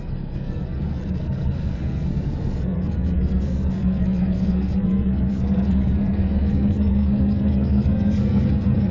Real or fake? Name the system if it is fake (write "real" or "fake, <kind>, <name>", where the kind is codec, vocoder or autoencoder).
fake, codec, SNAC